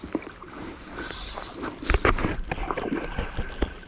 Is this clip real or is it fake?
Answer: real